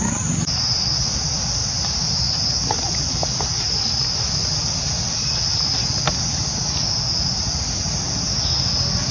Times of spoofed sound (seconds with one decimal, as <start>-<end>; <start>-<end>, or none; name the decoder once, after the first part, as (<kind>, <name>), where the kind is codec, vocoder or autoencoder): none